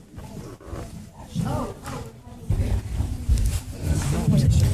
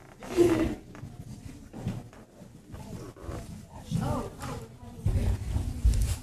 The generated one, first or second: first